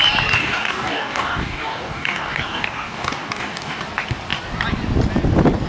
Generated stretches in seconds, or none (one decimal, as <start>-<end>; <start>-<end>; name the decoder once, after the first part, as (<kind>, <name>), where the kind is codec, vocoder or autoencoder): 0.4-3.8 (codec, DAC)